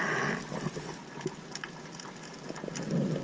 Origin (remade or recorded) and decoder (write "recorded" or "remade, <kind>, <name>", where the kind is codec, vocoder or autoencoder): recorded